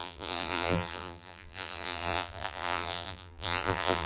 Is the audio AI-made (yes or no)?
yes